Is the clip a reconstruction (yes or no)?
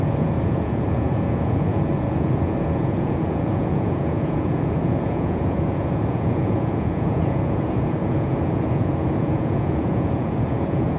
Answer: yes